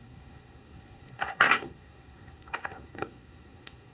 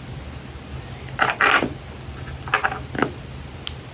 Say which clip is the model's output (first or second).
first